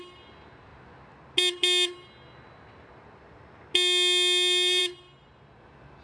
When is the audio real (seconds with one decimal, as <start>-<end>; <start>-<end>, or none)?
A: 0.0-6.0